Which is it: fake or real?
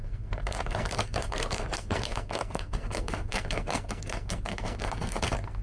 fake